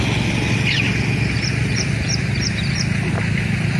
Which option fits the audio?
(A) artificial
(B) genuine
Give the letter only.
B